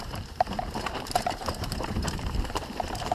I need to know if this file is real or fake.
fake